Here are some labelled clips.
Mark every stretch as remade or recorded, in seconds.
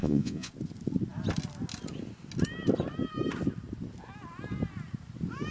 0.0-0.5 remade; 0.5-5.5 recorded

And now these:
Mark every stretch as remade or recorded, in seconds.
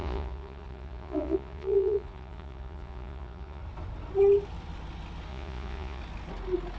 0.0-3.6 remade; 3.6-5.3 recorded; 5.3-6.0 remade; 6.0-6.8 recorded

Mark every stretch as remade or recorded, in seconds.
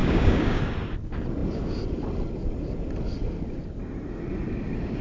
0.0-0.6 remade; 0.6-5.0 recorded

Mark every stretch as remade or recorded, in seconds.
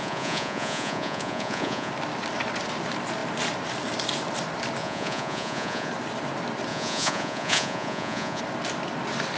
0.0-1.9 remade; 1.9-4.8 recorded; 4.8-5.9 remade; 5.9-6.7 recorded; 6.7-8.4 remade; 8.4-9.4 recorded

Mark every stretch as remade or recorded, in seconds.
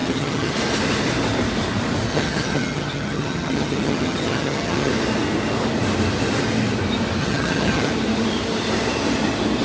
0.0-0.5 remade; 0.5-2.1 recorded; 2.1-4.9 remade; 4.9-7.2 recorded; 7.2-7.9 remade; 7.9-9.6 recorded